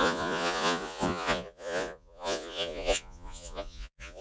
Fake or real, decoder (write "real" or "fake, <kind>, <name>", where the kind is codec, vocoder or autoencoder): fake, vocoder, Vocos